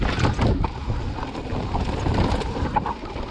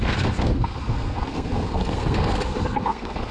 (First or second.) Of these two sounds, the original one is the first